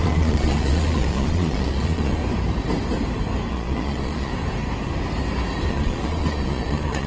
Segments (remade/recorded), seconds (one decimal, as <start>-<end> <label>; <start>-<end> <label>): 0.0-2.2 remade; 2.2-3.5 recorded; 3.5-4.3 remade; 4.3-5.7 recorded; 5.7-7.1 remade